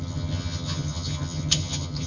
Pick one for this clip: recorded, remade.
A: remade